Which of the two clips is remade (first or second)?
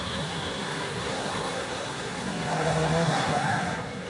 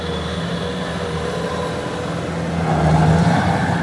first